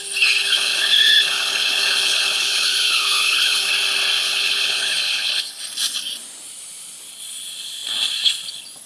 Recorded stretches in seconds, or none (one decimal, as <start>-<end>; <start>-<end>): 0.0-0.4; 3.7-4.2; 5.6-8.9